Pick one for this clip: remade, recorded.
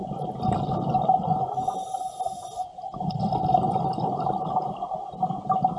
recorded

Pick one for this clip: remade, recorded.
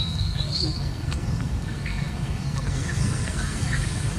remade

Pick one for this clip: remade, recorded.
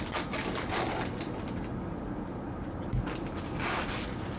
recorded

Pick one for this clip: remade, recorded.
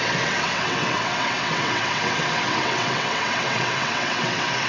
remade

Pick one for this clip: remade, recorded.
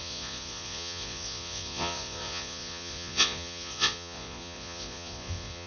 remade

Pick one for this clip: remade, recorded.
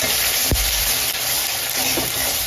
remade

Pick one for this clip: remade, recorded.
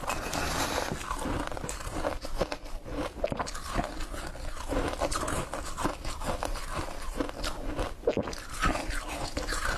recorded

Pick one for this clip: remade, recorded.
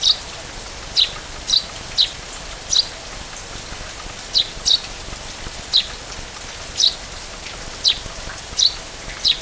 recorded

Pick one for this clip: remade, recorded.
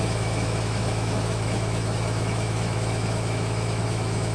remade